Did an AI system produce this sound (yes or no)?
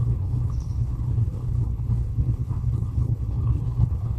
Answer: yes